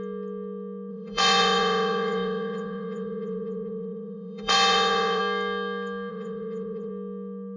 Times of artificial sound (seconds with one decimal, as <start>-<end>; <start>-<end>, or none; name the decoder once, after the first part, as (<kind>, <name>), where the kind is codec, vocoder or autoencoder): 0.9-5.2 (vocoder, Vocos); 6.1-6.9